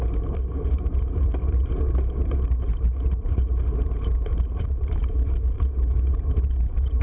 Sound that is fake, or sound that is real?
fake